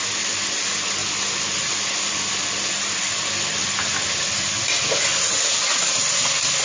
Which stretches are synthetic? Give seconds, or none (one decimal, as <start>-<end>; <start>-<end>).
none